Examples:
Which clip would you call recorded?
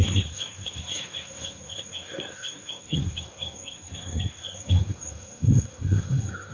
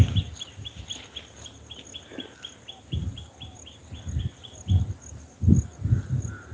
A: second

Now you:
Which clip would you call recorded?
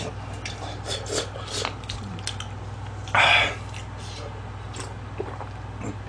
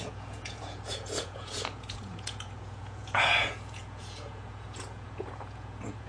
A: first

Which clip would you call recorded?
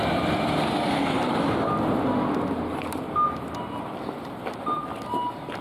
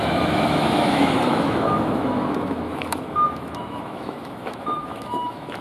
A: first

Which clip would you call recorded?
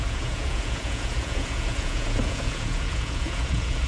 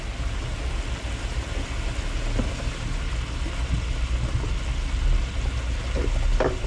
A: second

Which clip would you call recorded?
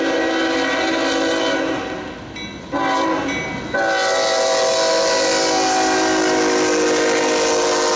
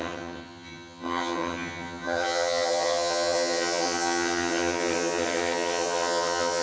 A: first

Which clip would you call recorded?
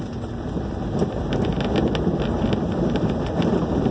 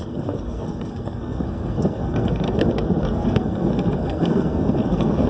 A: first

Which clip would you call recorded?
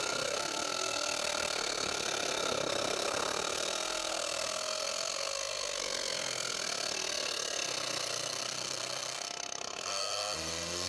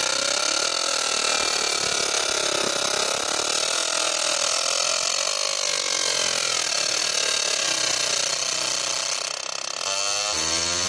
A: second